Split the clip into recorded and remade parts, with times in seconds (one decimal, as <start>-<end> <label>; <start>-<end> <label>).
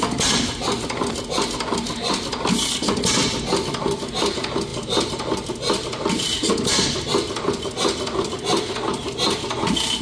0.0-4.7 recorded; 4.7-8.3 remade; 8.3-10.0 recorded